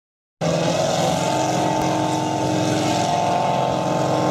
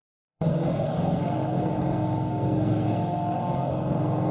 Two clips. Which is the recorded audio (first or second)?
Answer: first